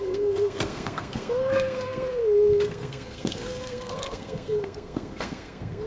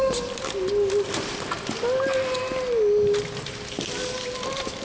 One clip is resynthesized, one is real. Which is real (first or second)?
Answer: second